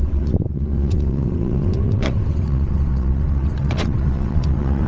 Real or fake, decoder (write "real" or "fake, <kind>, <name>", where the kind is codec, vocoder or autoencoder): fake, vocoder, WaveNeXt